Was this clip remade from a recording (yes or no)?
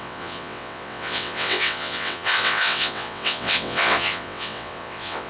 yes